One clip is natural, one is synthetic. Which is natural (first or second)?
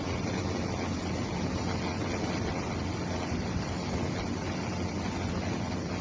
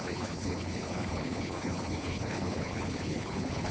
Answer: first